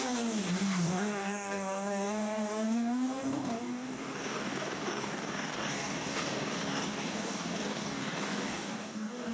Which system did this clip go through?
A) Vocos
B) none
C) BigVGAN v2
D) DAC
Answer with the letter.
D